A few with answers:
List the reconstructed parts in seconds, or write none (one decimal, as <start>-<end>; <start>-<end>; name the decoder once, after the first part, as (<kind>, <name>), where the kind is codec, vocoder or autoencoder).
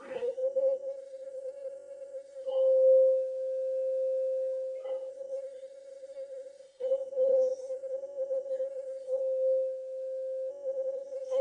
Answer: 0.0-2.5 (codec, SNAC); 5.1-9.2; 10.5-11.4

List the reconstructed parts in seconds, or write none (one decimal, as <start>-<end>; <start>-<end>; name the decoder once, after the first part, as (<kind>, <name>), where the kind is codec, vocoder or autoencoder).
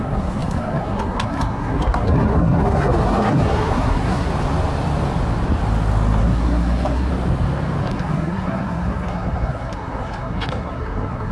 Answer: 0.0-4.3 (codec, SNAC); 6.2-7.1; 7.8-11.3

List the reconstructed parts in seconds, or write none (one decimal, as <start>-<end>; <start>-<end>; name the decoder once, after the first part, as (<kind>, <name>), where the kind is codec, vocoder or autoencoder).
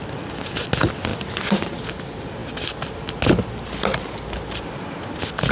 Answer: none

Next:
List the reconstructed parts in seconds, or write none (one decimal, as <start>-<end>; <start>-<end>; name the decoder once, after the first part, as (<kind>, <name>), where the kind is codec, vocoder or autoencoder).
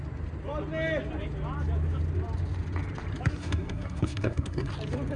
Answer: 3.4-4.7 (codec, SNAC)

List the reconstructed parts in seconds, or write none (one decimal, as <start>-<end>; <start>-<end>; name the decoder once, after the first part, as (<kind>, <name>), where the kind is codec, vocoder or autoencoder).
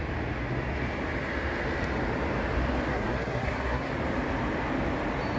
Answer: 2.9-3.9 (codec, SNAC)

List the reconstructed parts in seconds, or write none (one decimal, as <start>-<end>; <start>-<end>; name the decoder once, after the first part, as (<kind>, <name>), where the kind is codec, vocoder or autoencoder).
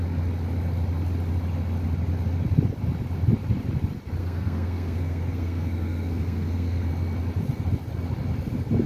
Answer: 4.2-6.9 (codec, SNAC)